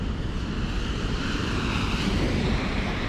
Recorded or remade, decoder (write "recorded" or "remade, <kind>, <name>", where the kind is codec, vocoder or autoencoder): remade, vocoder, BigVGAN v2